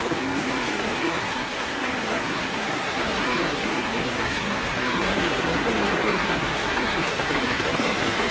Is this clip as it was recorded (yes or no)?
no